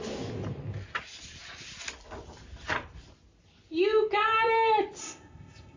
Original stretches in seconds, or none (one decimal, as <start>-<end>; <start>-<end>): 0.0-5.0